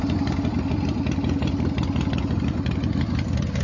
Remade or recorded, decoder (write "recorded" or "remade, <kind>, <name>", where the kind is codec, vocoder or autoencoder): recorded